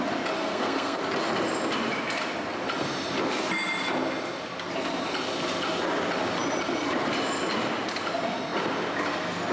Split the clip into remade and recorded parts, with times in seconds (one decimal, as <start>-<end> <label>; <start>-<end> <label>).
0.0-0.4 recorded; 0.4-1.0 remade; 1.0-9.5 recorded